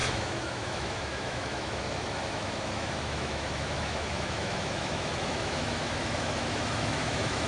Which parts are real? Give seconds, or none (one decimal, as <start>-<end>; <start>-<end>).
none